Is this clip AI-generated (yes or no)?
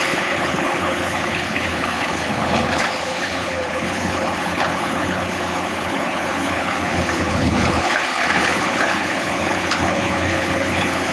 yes